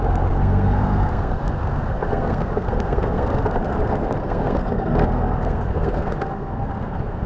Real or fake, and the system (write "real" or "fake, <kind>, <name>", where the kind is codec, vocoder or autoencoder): fake, codec, SNAC